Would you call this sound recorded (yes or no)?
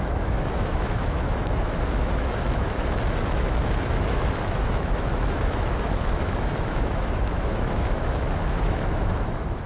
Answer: no